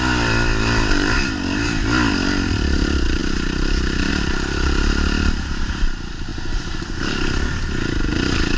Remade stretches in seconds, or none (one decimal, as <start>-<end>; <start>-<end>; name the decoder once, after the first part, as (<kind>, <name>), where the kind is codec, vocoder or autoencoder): 0.0-3.2 (vocoder, BigVGAN v2); 4.1-6.3